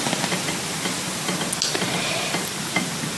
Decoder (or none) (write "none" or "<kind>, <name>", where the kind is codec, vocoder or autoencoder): none